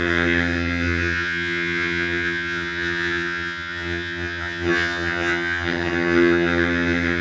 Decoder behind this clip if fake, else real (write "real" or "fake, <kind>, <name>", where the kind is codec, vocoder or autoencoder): fake, vocoder, HiFi-GAN